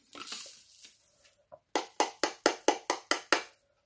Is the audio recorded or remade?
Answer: recorded